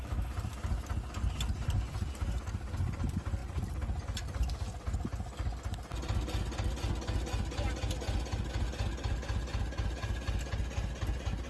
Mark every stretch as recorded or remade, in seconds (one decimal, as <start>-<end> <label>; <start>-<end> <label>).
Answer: 0.0-11.5 recorded